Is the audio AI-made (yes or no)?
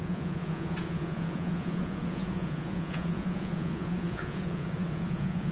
yes